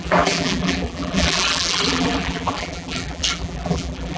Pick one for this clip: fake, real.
fake